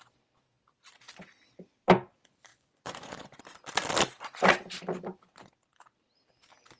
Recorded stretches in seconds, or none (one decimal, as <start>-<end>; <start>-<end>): 0.0-2.5; 3.4-6.8